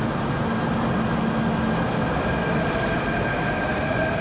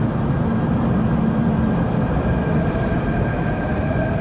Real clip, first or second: first